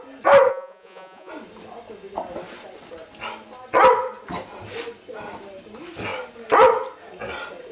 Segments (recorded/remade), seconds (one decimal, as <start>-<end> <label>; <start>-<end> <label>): 0.0-0.5 recorded; 0.5-1.3 remade; 1.3-7.7 recorded